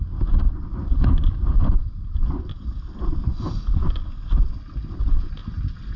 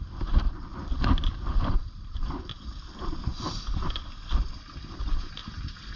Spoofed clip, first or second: second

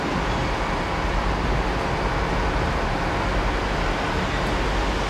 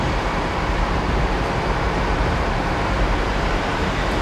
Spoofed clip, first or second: second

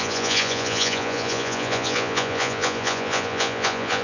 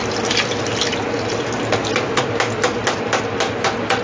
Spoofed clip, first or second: first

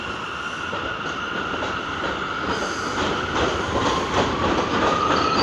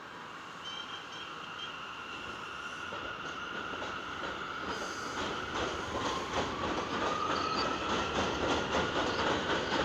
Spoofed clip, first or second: first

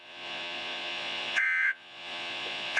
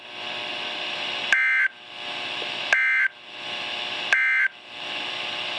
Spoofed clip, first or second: first